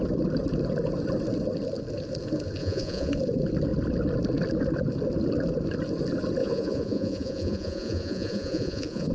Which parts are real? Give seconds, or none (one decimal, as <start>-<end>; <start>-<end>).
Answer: 0.0-2.6; 3.1-6.4